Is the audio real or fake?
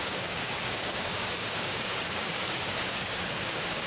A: fake